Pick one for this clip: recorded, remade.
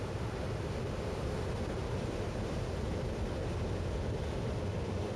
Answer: recorded